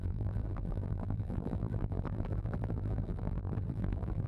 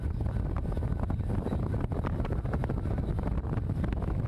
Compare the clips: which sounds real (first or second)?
second